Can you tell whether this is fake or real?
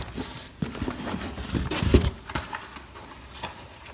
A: real